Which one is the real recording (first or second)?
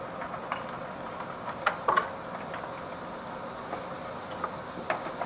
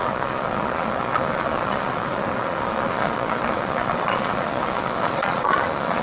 first